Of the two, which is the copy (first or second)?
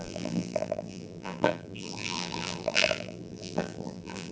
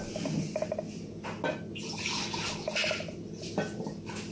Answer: first